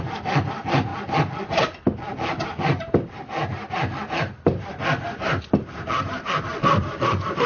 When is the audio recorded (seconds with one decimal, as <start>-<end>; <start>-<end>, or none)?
0.0-6.5